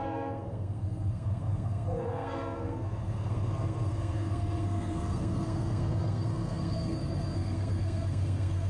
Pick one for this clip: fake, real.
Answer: fake